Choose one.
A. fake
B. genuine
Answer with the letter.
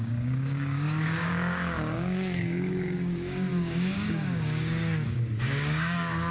A